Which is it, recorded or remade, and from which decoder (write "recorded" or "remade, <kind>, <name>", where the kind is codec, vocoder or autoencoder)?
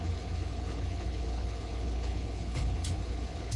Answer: remade, codec, HILCodec